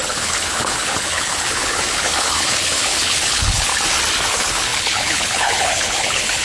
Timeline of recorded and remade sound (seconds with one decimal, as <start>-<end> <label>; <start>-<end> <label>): 0.0-3.7 remade; 3.7-4.3 recorded; 4.3-6.4 remade